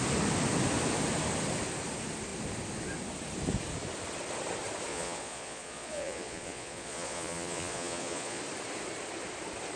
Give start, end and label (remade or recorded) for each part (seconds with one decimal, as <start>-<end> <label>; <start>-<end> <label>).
0.0-4.9 recorded; 4.9-8.4 remade; 8.4-9.8 recorded